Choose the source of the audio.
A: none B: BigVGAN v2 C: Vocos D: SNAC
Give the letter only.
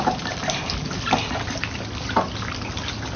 A